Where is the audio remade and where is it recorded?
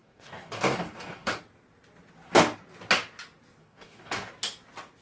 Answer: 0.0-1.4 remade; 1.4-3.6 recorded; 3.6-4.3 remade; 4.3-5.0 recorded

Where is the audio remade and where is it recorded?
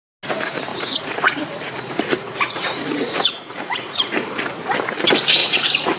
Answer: 0.0-0.7 recorded; 0.7-4.3 remade; 4.3-5.4 recorded; 5.4-6.0 remade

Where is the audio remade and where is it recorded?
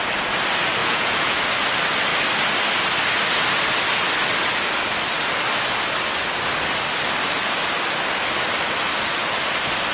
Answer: 0.0-0.8 recorded; 0.8-1.4 remade; 1.4-9.9 recorded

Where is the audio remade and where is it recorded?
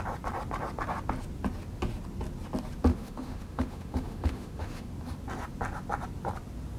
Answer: 0.0-2.9 recorded; 2.9-4.9 remade; 4.9-6.8 recorded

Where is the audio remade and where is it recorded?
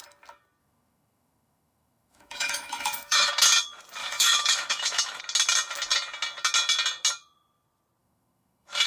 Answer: 0.0-0.6 recorded; 0.6-3.3 remade; 3.3-4.0 recorded; 4.0-5.2 remade; 5.2-8.0 recorded; 8.0-8.9 remade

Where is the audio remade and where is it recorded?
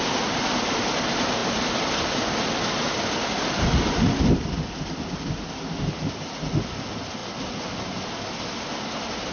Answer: 0.0-9.3 recorded